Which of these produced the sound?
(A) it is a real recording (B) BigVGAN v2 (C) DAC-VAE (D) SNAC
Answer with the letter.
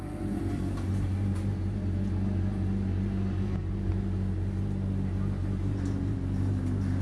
A